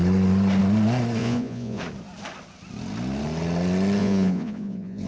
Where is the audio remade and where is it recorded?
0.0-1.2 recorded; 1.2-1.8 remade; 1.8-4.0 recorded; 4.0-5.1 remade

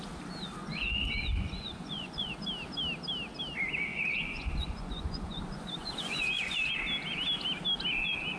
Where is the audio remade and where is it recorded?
0.0-0.6 recorded; 0.6-2.3 remade; 2.3-3.9 recorded; 3.9-6.7 remade; 6.7-8.4 recorded

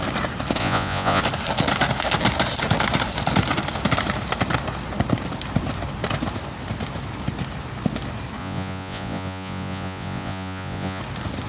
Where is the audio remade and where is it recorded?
0.0-0.6 recorded; 0.6-1.2 remade; 1.2-8.4 recorded; 8.4-11.0 remade; 11.0-11.5 recorded

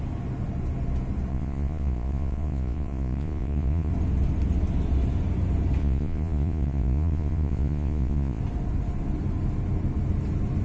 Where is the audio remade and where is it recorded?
0.0-1.3 recorded; 1.3-3.9 remade; 3.9-5.8 recorded; 5.8-8.4 remade; 8.4-10.6 recorded

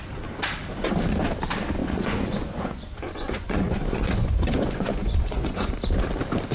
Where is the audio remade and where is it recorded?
0.0-1.8 recorded; 1.8-5.7 remade; 5.7-6.5 recorded